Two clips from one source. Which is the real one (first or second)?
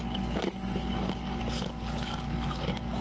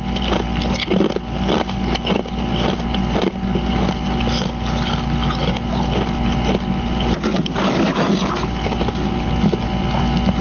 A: second